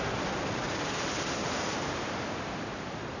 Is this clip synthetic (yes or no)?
yes